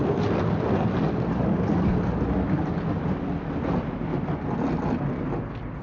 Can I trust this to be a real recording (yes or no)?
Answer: yes